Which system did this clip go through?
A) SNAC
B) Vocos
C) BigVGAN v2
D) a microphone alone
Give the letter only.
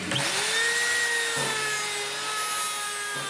D